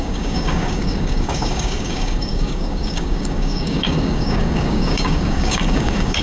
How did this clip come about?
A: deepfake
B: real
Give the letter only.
A